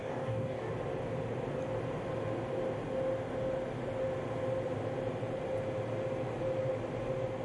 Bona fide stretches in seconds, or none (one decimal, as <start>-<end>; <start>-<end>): 0.7-7.4